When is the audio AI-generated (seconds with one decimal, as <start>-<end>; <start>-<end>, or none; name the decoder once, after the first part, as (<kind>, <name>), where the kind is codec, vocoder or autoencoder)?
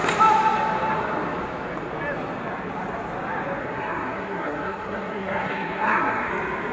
3.6-6.3 (codec, SNAC)